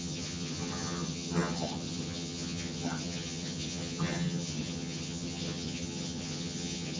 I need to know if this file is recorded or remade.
remade